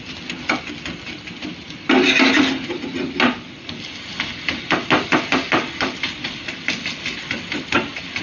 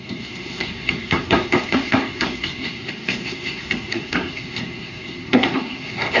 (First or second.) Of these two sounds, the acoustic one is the first